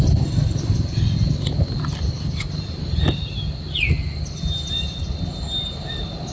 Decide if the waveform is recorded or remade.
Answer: recorded